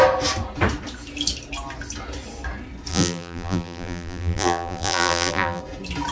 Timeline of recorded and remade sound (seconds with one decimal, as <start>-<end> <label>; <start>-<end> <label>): 0.0-2.9 recorded; 2.9-5.6 remade; 5.6-6.1 recorded